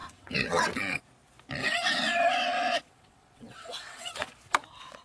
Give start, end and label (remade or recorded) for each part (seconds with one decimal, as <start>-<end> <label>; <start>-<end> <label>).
0.0-1.0 remade; 1.0-1.6 recorded; 1.6-4.3 remade; 4.3-5.0 recorded